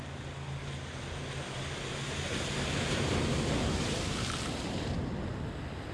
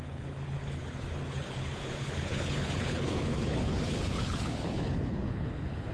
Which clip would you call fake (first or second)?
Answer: second